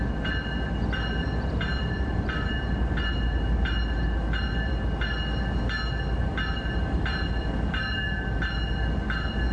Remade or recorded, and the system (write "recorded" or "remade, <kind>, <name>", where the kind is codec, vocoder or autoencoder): recorded